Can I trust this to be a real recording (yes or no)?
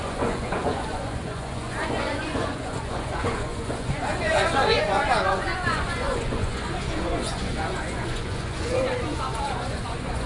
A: no